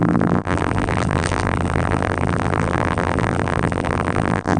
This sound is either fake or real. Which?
fake